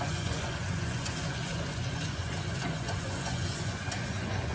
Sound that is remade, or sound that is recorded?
remade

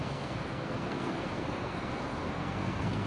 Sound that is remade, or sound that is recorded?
remade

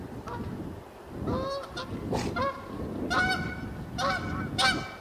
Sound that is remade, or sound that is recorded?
recorded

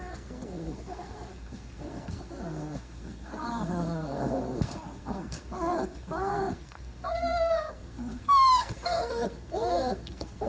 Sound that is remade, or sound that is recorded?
remade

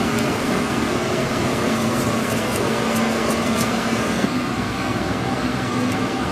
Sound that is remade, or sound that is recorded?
remade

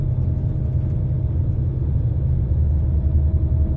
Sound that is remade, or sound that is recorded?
recorded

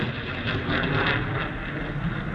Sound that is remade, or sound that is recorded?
recorded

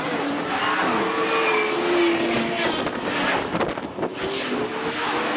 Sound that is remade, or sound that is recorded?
recorded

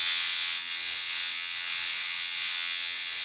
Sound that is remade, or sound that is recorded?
remade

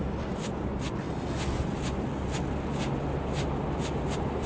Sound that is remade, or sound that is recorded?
recorded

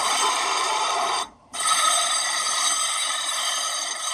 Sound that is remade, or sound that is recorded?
remade